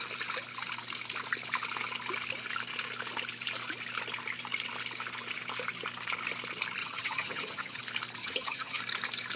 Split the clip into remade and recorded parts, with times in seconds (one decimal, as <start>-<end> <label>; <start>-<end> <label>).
0.0-6.8 recorded; 6.8-7.8 remade; 7.8-8.2 recorded; 8.2-8.8 remade; 8.8-9.4 recorded